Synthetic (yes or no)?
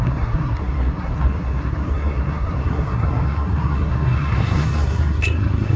yes